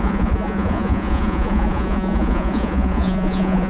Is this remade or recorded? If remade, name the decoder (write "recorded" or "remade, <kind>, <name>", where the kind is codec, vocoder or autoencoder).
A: remade, vocoder, Vocos